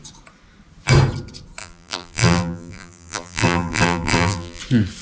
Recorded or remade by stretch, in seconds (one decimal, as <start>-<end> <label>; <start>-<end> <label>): 0.0-1.6 recorded; 1.6-4.6 remade; 4.6-5.0 recorded